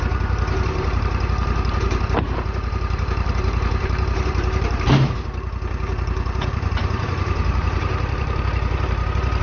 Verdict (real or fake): fake